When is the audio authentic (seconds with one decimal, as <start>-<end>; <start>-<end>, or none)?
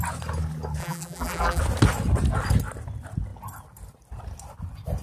0.0-0.8; 1.6-5.0